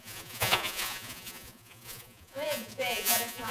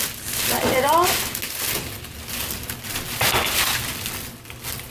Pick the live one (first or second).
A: second